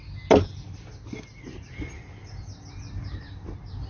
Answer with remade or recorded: recorded